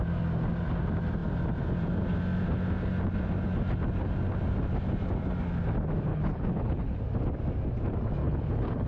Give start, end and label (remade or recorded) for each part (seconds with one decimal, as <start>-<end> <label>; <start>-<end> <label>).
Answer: 0.0-6.1 recorded; 6.1-7.0 remade; 7.0-8.2 recorded; 8.2-8.9 remade